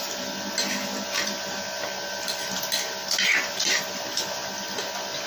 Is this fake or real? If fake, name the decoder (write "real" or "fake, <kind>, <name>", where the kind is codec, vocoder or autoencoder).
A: real